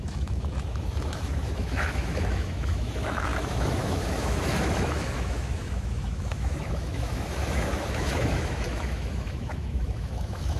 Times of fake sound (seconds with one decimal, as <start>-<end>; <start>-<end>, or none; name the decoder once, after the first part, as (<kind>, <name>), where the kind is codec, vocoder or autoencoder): 0.0-10.6 (autoencoder, DAC-VAE)